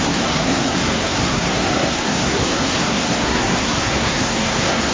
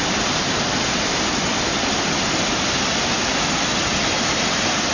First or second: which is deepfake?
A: first